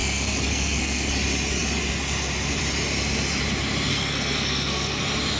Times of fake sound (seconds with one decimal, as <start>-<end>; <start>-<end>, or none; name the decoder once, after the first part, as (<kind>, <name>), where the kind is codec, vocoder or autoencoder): 0.0-1.1 (codec, SNAC); 3.9-5.0

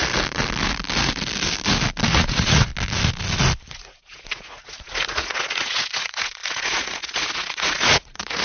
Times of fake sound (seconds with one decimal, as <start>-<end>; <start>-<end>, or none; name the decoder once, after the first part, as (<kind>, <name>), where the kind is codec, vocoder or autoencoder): 2.1-2.7 (vocoder, Vocos); 3.7-8.4

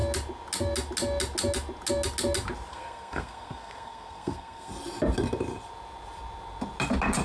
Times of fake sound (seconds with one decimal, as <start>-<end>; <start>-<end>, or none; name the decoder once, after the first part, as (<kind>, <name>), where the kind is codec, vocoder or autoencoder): 2.7-4.7 (codec, SNAC)

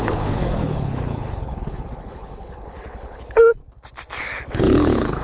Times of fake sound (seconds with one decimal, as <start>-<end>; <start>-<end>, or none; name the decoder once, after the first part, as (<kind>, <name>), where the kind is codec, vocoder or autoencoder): 0.0-3.6 (codec, HILCodec); 4.2-5.2

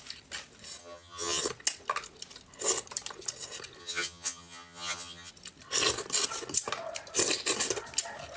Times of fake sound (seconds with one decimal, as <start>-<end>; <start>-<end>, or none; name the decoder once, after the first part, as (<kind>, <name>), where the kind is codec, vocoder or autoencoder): 0.8-1.4 (vocoder, HiFi-GAN); 3.8-5.3

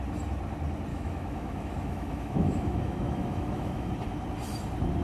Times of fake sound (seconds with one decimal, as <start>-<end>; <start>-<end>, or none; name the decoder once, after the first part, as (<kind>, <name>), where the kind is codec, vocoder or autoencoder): 0.9-3.9 (autoencoder, DAC-VAE)